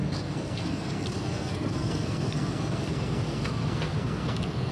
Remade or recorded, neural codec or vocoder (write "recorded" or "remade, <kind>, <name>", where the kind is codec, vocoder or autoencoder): remade, codec, SNAC